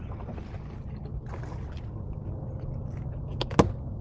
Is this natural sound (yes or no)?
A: yes